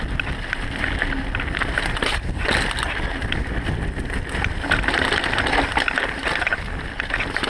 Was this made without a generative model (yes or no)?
yes